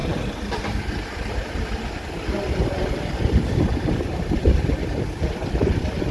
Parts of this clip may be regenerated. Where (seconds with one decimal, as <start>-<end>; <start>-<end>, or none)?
0.0-2.1; 3.7-5.5